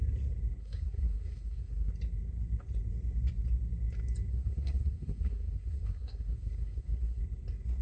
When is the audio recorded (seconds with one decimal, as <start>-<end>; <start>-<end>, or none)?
0.0-0.6; 1.9-4.3; 7.2-7.8